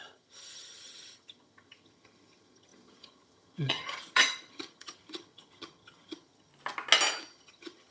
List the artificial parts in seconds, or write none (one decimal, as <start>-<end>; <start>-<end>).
0.0-6.5; 7.3-7.9